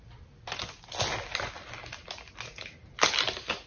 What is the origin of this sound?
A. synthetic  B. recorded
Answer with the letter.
B